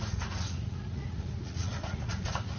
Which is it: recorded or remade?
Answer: remade